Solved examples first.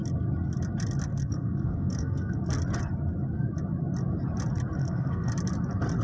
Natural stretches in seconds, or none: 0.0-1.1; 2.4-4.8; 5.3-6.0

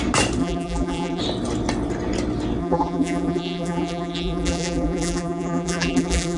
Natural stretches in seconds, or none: 0.0-0.4; 1.2-2.6